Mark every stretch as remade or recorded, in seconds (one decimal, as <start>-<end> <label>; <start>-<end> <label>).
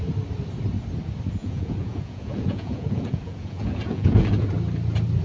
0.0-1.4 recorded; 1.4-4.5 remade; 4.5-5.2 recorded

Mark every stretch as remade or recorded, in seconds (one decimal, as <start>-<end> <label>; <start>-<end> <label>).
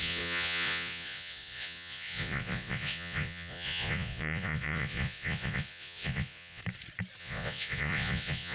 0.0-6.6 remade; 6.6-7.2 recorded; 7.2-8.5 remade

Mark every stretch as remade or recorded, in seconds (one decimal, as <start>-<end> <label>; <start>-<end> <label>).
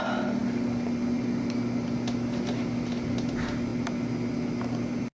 0.0-5.2 recorded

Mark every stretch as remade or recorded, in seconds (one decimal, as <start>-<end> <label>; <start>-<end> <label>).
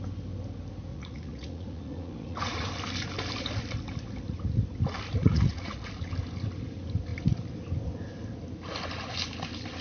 0.0-0.9 recorded; 0.9-2.7 remade; 2.7-5.2 recorded; 5.2-5.9 remade; 5.9-9.8 recorded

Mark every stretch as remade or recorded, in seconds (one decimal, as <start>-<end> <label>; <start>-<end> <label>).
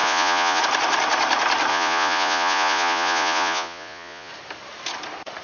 0.0-0.6 remade; 0.6-1.7 recorded; 1.7-4.3 remade; 4.3-5.4 recorded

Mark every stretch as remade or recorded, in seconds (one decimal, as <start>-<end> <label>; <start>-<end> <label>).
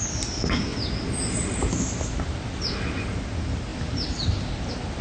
0.0-5.0 recorded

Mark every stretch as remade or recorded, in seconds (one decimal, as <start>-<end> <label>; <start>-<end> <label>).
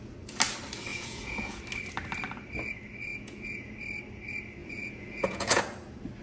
0.0-0.9 recorded; 0.9-1.6 remade; 1.6-3.1 recorded; 3.1-3.7 remade; 3.7-4.6 recorded; 4.6-5.6 remade; 5.6-6.2 recorded